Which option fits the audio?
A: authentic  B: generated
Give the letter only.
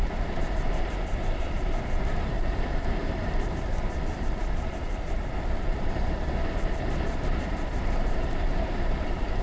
B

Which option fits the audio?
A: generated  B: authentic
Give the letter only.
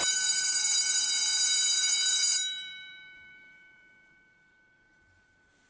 A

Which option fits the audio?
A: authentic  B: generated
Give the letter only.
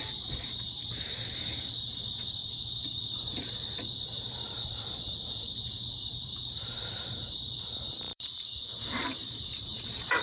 B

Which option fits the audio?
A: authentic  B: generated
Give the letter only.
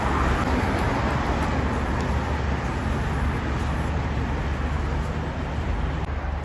A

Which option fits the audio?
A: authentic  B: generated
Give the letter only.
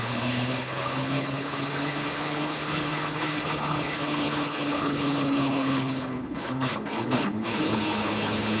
B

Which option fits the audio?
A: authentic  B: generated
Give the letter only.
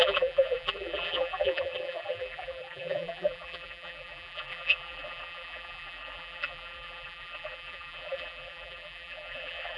B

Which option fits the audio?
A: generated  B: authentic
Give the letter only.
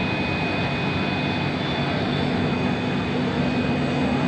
B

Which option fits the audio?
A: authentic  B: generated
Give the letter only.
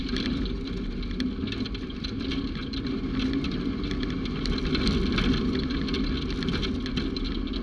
A